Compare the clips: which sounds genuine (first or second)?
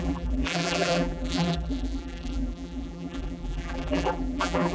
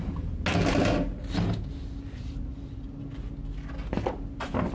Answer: second